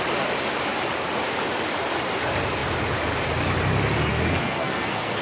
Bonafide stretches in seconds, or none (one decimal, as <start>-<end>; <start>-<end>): 0.0-4.1